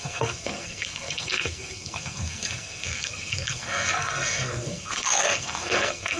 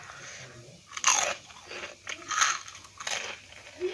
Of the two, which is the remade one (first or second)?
first